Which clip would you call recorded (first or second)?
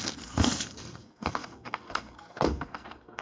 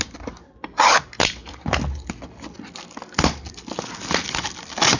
second